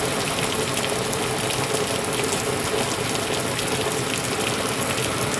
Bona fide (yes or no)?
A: yes